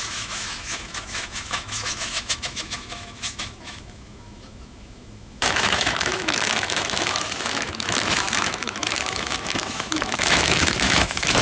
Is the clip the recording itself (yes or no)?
no